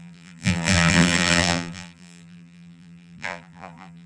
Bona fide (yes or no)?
no